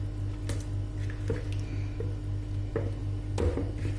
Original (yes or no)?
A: yes